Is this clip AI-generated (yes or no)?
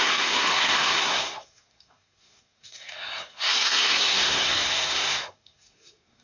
yes